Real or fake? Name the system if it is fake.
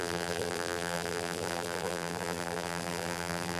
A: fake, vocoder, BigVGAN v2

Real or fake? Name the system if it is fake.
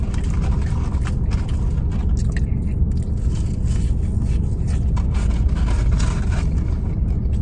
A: real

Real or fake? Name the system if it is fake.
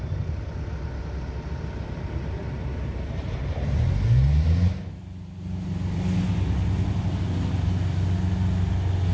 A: real